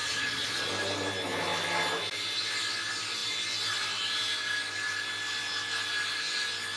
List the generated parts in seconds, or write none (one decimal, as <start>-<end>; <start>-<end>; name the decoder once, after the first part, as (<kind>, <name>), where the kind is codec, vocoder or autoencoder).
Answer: 0.0-0.7 (vocoder, Vocos)